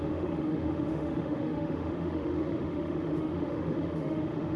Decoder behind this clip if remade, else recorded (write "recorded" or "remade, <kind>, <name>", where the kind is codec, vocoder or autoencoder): remade, autoencoder, DAC-VAE